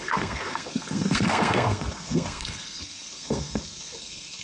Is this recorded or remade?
remade